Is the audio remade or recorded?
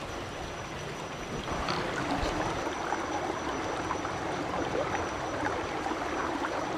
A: recorded